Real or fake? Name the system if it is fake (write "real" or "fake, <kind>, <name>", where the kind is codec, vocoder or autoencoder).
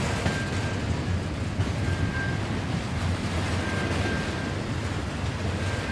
real